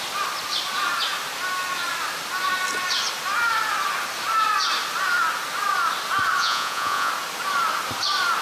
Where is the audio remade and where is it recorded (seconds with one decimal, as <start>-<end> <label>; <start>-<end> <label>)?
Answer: 0.0-6.4 recorded; 6.4-7.1 remade; 7.1-8.4 recorded